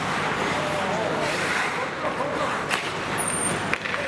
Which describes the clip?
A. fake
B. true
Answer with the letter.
B